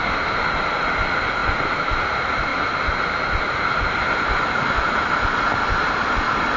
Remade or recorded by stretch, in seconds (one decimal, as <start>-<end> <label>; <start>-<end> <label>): 0.0-6.6 recorded